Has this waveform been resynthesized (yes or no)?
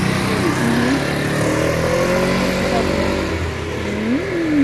no